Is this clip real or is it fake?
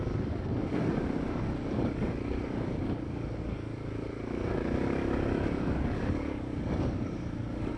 fake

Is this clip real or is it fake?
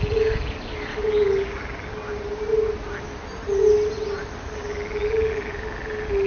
real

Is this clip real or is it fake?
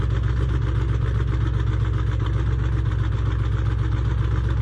real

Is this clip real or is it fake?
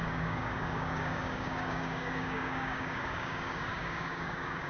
fake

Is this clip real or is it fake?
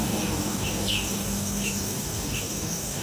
fake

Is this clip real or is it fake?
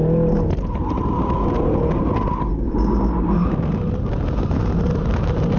real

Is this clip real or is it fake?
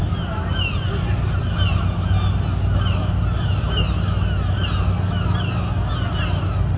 real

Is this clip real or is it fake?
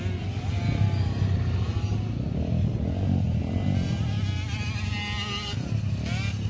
real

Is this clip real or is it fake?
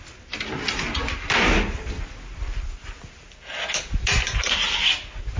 real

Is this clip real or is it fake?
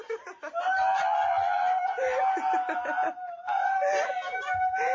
real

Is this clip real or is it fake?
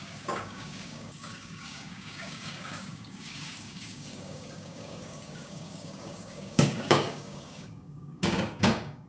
fake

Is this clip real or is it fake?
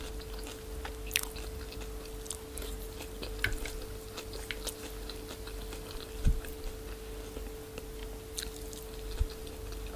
real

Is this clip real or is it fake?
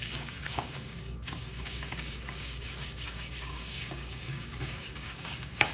fake